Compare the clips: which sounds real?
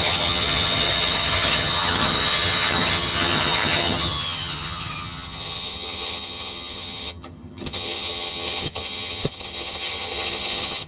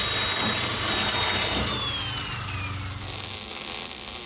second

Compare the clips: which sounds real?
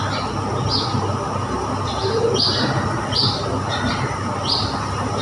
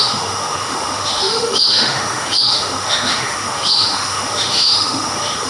first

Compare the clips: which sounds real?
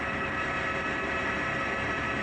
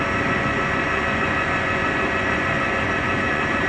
first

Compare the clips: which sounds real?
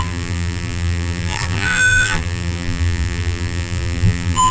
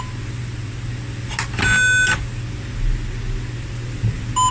second